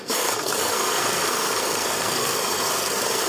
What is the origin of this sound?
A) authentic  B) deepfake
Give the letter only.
B